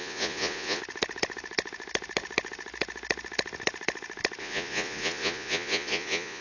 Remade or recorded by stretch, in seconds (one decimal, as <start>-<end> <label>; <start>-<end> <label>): 0.0-0.8 remade; 0.8-4.4 recorded; 4.4-6.4 remade